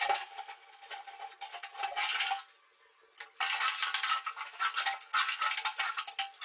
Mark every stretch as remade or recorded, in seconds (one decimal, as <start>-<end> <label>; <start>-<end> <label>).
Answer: 0.0-6.4 recorded